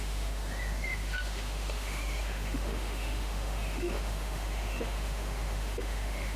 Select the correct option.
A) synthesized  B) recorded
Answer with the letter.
A